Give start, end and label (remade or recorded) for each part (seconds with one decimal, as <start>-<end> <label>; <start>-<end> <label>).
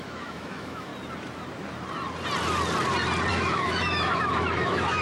0.0-0.9 remade; 0.9-3.3 recorded; 3.3-5.0 remade